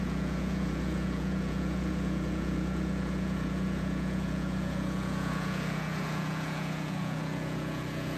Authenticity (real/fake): fake